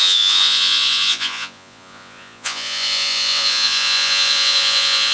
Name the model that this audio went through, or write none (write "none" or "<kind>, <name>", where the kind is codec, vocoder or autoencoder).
vocoder, Vocos